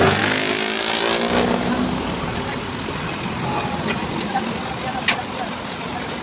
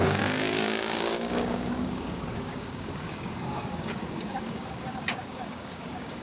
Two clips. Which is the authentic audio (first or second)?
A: first